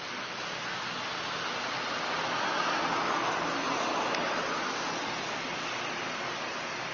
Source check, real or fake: real